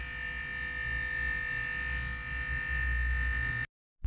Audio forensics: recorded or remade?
recorded